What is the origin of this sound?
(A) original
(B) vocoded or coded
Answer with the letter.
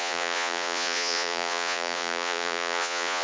B